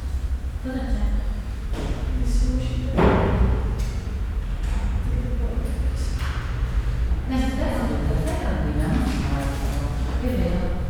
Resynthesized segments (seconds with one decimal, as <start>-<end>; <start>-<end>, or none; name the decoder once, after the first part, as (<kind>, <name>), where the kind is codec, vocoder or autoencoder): 2.0-2.6 (autoencoder, DAC-VAE)